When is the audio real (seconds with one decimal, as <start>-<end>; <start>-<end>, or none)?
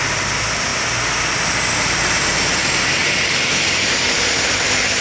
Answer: 0.0-3.0; 4.3-5.0